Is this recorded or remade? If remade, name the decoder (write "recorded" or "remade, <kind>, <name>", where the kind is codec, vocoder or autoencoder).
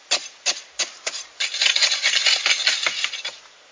recorded